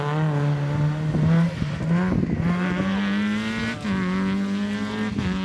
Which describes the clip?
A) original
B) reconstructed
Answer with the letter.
A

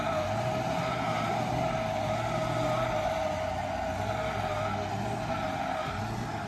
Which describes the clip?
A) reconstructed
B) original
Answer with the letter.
B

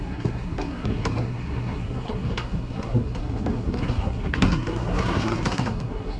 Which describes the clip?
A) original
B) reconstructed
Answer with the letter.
B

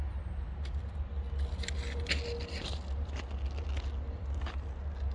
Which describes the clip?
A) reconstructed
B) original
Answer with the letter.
B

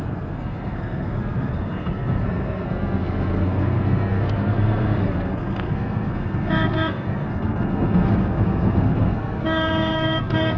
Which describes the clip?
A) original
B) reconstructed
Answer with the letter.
B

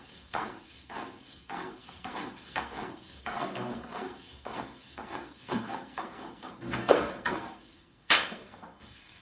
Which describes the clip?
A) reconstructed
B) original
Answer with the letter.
A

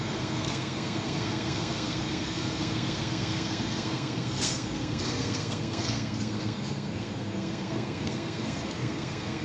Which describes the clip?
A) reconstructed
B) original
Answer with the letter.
A